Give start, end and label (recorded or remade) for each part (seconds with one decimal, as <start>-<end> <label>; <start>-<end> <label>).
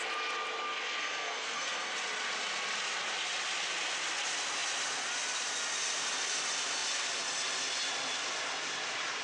0.0-1.0 recorded; 1.0-1.9 remade; 1.9-9.2 recorded